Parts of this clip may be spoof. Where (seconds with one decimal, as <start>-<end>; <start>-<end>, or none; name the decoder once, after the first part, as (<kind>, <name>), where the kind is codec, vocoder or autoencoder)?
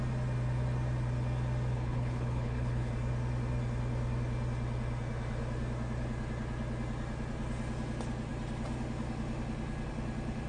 1.7-2.9 (codec, HILCodec)